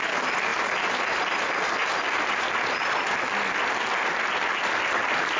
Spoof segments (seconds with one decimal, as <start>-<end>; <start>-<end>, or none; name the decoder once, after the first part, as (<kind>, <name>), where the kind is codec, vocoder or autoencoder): none

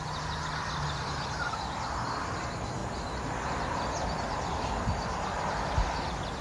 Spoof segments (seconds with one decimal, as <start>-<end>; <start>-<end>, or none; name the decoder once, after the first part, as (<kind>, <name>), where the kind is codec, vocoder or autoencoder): none